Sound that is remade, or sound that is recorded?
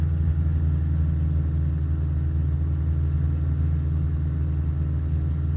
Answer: recorded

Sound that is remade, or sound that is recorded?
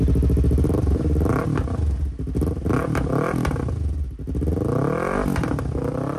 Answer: recorded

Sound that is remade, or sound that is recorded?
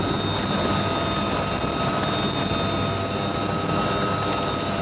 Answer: recorded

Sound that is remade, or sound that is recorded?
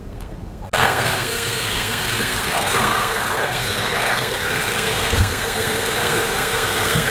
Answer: remade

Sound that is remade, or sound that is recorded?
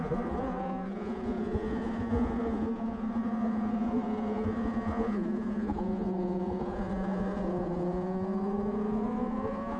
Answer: remade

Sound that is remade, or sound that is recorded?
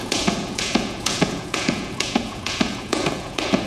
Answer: remade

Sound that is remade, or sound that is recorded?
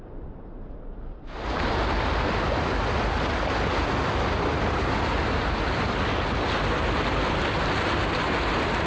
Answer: recorded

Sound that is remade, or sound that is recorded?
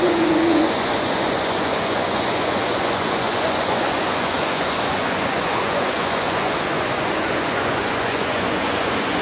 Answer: remade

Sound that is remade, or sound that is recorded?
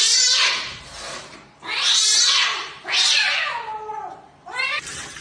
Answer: remade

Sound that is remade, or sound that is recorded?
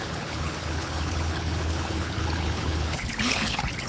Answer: remade